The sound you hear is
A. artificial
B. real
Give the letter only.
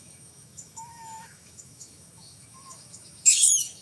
A